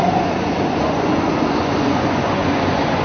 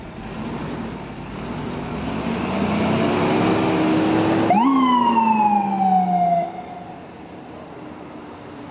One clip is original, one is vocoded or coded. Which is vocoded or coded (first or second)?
first